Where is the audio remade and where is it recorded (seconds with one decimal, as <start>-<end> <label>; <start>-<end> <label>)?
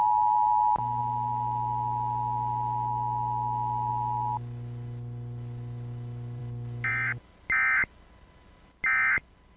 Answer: 0.0-9.6 recorded